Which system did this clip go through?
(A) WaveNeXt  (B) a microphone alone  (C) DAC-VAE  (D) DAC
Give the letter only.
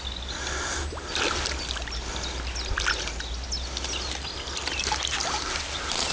B